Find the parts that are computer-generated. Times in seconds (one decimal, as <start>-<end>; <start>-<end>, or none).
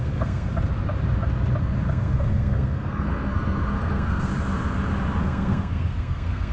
0.0-0.5; 1.9-4.3; 5.2-6.5